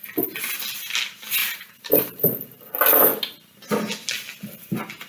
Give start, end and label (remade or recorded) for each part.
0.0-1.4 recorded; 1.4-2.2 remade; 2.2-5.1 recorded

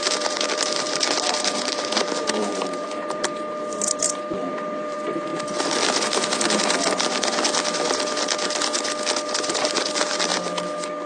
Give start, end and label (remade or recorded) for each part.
0.0-5.3 remade; 5.3-9.9 recorded; 9.9-10.3 remade; 10.3-11.1 recorded

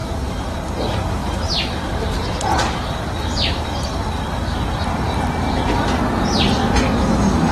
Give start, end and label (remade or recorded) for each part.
0.0-0.7 remade; 0.7-1.2 recorded; 1.2-5.4 remade; 5.4-7.5 recorded